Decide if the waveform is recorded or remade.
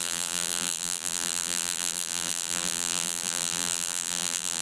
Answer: remade